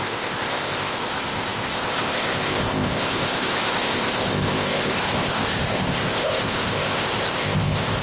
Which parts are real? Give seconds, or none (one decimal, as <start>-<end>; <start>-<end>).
none